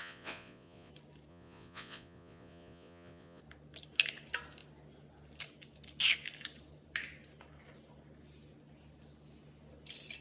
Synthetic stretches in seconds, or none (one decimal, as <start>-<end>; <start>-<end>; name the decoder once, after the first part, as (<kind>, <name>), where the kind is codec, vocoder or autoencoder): 0.0-0.9 (vocoder, Vocos); 1.3-3.4